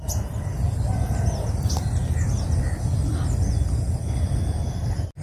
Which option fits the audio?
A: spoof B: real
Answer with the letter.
B